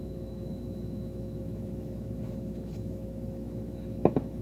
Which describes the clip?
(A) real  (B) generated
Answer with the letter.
B